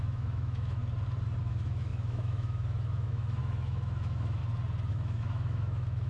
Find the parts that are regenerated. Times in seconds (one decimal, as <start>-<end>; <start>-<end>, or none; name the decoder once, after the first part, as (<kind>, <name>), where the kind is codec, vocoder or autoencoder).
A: 0.0-0.8 (autoencoder, DAC-VAE); 1.4-4.4; 4.9-6.1